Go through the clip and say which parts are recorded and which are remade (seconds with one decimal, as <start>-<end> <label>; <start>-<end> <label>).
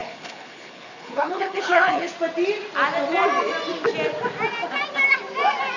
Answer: 0.0-2.1 remade; 2.1-5.8 recorded